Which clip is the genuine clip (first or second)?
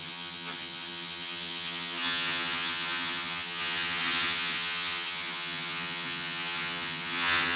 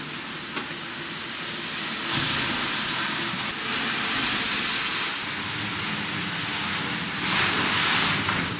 second